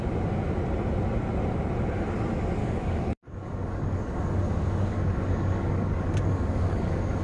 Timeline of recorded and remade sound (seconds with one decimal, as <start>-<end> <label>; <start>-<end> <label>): 0.0-2.6 recorded; 2.6-7.2 remade